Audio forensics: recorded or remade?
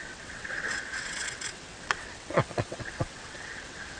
remade